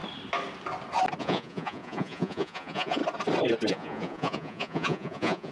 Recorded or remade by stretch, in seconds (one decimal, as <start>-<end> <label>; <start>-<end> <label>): 0.0-1.2 recorded; 1.2-3.0 remade; 3.0-3.7 recorded; 3.7-5.5 remade